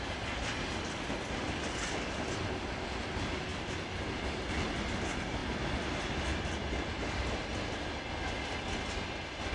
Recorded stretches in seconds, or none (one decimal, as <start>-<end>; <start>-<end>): 0.0-9.5

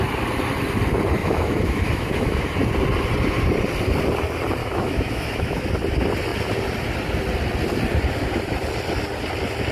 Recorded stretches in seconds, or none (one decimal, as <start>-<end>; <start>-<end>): 0.0-1.2; 2.4-4.6; 5.7-9.7